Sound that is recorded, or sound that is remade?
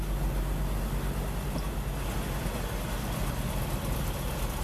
recorded